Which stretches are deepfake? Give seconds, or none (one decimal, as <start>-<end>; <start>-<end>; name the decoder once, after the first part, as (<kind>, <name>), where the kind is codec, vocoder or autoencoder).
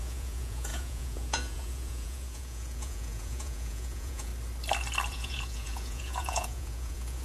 0.0-4.3 (vocoder, Vocos); 5.1-7.2